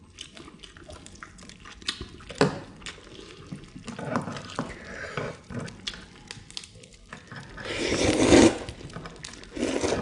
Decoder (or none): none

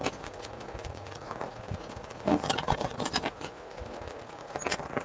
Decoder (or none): vocoder, Vocos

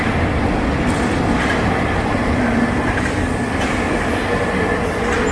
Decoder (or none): none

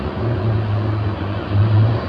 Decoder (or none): vocoder, Vocos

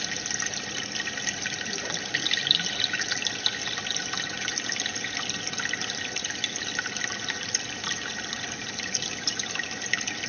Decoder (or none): none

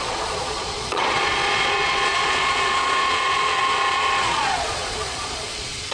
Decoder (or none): vocoder, Vocos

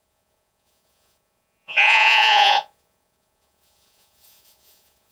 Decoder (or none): vocoder, Vocos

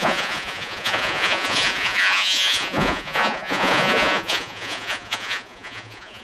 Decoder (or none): vocoder, Vocos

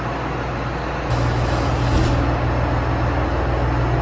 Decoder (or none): none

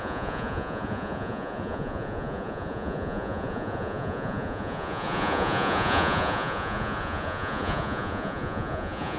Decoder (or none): vocoder, Vocos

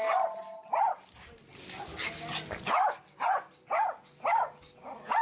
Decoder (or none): none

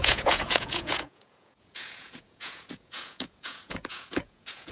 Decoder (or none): vocoder, Vocos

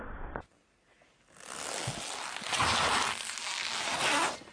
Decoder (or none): none